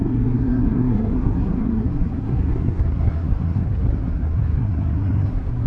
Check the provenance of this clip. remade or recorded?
remade